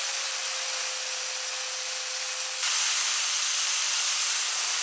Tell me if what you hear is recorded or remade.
recorded